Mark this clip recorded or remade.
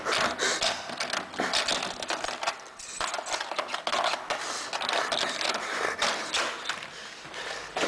recorded